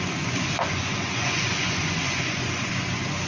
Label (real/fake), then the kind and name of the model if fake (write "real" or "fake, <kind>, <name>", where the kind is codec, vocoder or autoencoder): fake, vocoder, Vocos